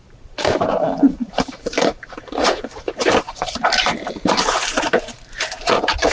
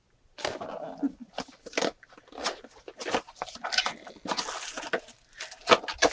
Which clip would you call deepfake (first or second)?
first